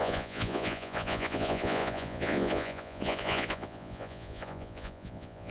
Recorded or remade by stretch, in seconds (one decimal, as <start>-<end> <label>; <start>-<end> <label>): 0.0-5.5 remade